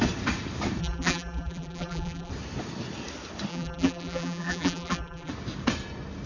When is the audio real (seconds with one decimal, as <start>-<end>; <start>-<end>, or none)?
0.0-0.8; 2.3-3.5; 5.3-6.3